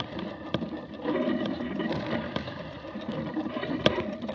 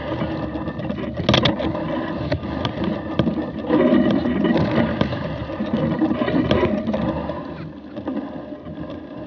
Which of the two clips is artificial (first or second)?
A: first